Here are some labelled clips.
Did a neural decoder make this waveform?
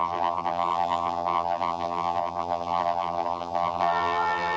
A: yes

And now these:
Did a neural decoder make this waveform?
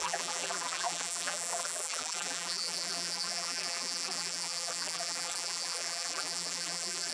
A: yes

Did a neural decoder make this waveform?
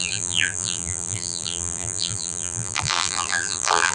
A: yes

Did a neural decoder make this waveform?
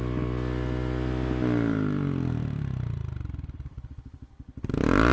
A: yes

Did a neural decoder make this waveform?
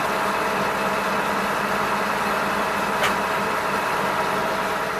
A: no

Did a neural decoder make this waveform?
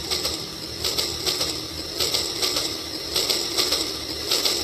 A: no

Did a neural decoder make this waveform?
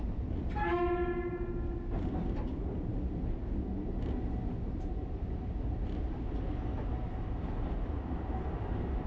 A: no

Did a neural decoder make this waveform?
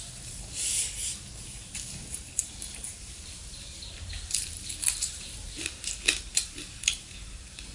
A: yes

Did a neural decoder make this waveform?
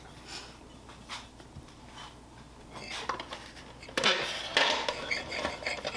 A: no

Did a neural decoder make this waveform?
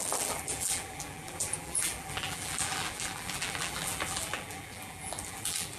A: yes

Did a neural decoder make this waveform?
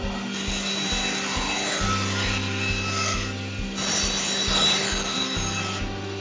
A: no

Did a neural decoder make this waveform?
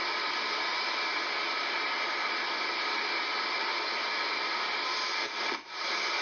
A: no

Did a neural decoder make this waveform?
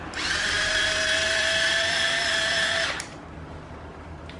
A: yes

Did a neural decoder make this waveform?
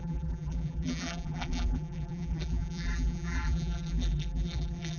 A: yes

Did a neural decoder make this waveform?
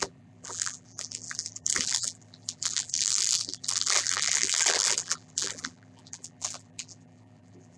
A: yes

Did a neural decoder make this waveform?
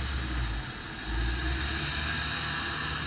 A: no